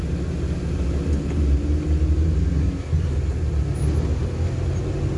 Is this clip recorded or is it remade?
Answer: recorded